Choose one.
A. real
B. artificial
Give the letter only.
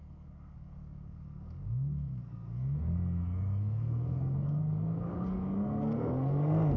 B